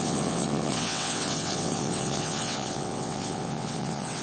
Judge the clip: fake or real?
fake